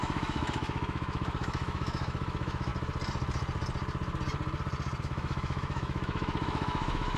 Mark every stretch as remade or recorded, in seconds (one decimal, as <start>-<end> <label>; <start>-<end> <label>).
0.0-2.7 remade; 2.7-5.0 recorded; 5.0-7.2 remade